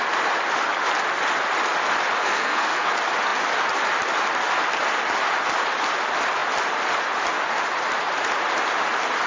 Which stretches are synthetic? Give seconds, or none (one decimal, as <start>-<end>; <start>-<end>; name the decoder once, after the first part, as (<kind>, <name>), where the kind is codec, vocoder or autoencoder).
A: 2.2-2.9 (codec, SNAC)

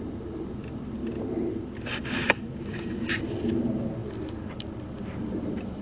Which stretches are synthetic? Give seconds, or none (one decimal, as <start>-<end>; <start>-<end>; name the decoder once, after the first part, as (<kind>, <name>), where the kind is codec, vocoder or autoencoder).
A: none